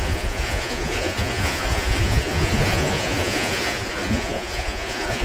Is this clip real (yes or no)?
no